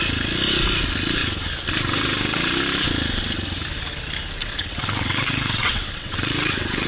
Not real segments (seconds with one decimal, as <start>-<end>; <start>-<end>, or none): 4.4-6.9